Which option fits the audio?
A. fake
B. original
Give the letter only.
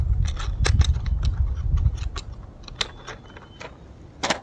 B